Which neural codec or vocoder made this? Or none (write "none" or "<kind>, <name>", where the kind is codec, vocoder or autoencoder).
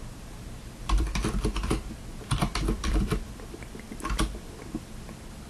vocoder, BigVGAN v2